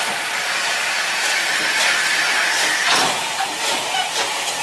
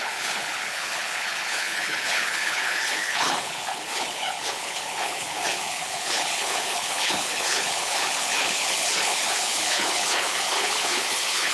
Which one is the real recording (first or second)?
first